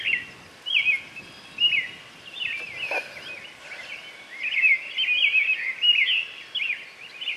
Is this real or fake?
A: real